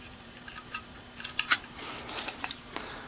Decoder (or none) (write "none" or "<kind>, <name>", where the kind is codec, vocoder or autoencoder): vocoder, BigVGAN v2